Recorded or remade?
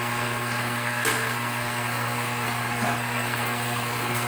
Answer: remade